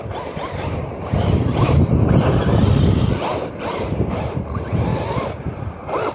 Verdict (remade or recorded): remade